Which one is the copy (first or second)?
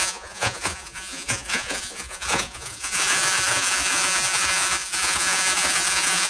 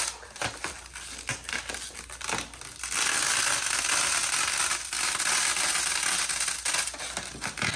first